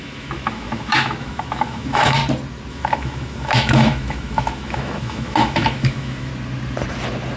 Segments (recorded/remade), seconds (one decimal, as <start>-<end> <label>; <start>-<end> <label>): 0.0-2.2 remade; 2.2-2.7 recorded; 2.7-6.3 remade; 6.3-7.4 recorded